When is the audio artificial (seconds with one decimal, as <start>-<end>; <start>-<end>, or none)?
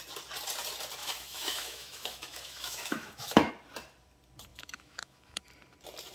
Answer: 1.0-3.5; 4.5-5.4